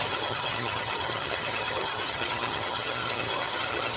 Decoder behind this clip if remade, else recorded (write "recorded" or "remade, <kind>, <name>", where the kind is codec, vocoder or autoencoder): remade, vocoder, HiFi-GAN